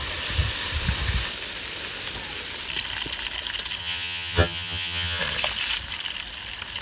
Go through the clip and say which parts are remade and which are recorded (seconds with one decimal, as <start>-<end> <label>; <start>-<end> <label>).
0.0-3.8 recorded; 3.8-5.2 remade; 5.2-6.8 recorded